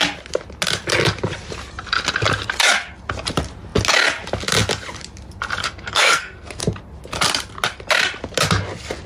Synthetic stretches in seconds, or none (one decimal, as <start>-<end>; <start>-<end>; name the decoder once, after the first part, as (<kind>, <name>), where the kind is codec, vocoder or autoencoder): 5.6-6.6 (codec, SNAC)